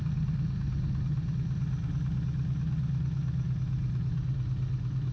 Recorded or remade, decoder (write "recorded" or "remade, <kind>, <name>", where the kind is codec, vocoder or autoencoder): recorded